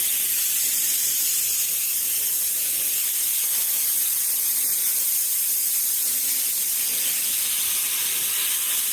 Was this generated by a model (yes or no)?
no